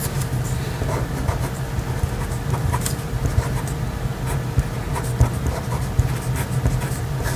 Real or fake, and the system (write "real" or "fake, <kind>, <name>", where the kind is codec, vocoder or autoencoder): real